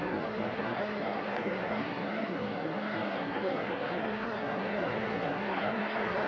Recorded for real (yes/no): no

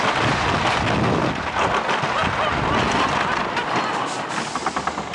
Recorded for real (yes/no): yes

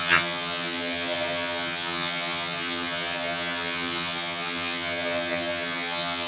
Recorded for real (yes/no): no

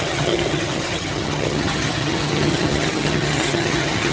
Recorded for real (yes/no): no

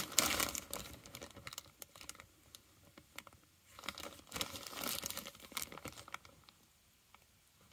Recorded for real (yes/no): yes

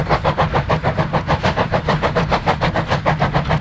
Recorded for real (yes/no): yes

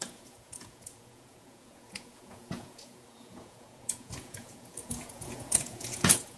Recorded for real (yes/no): no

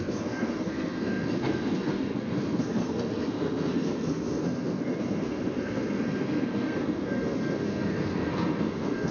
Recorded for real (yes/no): no